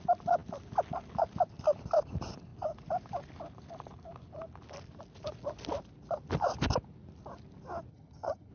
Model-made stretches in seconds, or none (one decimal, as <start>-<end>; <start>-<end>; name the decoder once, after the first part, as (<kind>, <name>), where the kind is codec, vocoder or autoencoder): 7.9-8.5 (vocoder, HiFi-GAN)